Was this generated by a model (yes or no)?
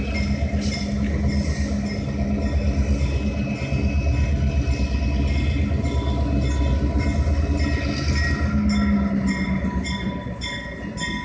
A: no